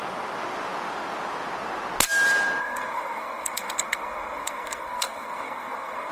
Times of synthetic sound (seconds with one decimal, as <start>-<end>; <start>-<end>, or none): 2.6-6.1